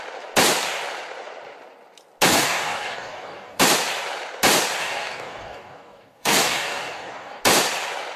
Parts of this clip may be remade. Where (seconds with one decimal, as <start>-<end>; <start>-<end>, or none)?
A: 2.3-3.6; 4.8-7.4